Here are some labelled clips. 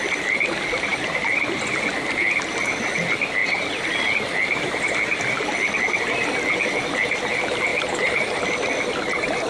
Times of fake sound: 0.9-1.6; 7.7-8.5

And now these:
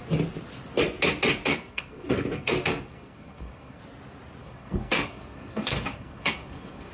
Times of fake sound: 1.4-3.8; 4.4-6.9

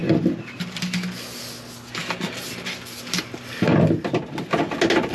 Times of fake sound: 2.3-3.7

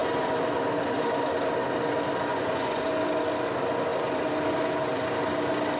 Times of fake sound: 2.3-2.9